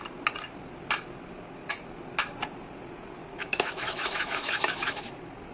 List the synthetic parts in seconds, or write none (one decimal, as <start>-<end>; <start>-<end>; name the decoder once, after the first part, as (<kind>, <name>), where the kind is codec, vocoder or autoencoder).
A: 3.4-5.1 (autoencoder, DAC-VAE)